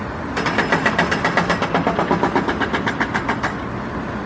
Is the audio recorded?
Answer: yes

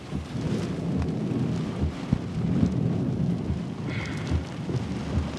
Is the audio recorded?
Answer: yes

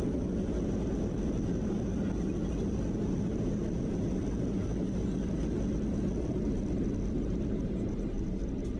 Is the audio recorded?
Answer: yes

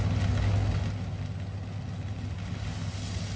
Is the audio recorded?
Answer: yes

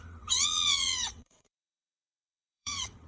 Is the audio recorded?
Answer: no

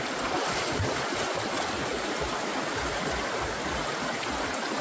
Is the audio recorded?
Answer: yes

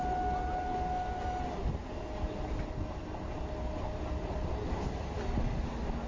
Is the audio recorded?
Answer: yes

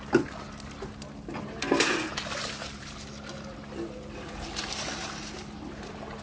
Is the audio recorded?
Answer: yes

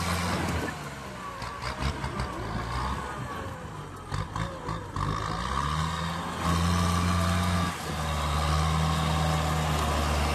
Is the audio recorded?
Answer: yes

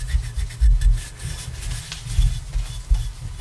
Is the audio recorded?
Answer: yes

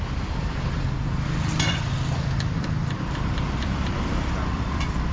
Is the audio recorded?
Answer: no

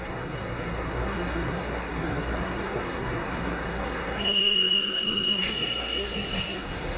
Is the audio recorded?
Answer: no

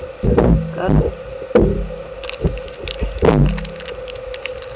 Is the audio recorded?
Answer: yes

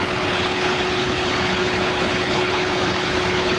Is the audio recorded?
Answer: no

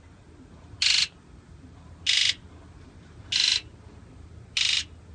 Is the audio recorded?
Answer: yes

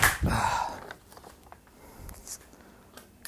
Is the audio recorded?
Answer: no